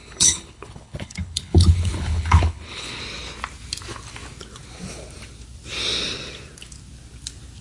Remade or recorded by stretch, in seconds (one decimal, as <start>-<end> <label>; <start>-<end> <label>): 0.0-3.0 remade; 3.0-7.6 recorded